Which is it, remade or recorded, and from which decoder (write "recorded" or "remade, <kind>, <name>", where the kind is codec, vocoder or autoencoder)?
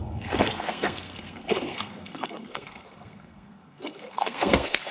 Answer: remade, codec, SNAC